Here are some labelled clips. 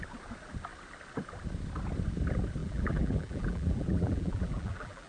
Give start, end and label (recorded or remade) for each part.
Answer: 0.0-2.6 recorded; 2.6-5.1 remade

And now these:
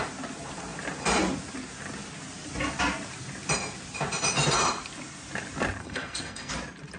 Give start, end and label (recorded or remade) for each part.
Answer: 0.0-5.8 recorded; 5.8-6.5 remade; 6.5-7.0 recorded